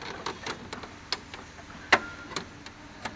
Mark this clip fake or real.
real